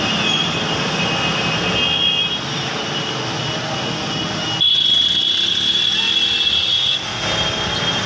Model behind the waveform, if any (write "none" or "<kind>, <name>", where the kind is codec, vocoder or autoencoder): none